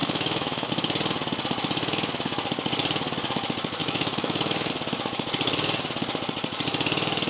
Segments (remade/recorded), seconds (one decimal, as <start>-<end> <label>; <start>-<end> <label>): 0.0-0.7 remade; 0.7-3.8 recorded; 3.8-4.7 remade; 4.7-7.3 recorded